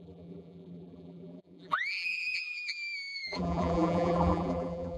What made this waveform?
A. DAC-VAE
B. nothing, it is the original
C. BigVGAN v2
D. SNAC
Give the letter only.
C